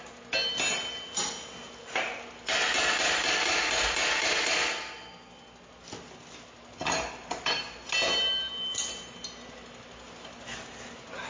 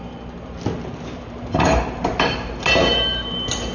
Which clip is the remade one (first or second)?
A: second